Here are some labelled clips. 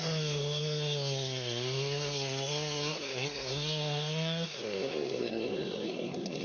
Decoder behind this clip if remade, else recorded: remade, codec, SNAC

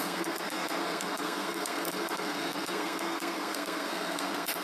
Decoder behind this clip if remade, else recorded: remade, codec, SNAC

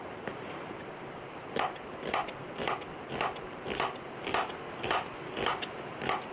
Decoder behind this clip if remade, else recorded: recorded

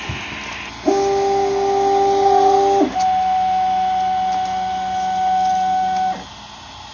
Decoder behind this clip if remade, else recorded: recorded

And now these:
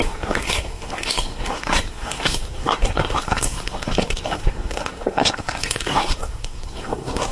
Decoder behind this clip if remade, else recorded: remade, codec, SNAC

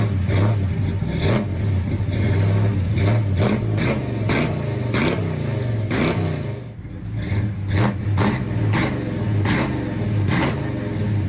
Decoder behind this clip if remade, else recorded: recorded